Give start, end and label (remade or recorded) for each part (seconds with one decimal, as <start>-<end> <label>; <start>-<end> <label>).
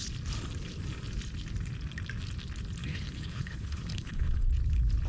0.0-2.8 recorded; 2.8-4.5 remade; 4.5-5.1 recorded